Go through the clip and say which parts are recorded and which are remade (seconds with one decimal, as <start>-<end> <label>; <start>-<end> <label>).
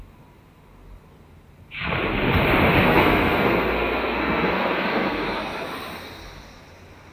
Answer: 0.0-2.8 recorded; 2.8-5.4 remade; 5.4-7.1 recorded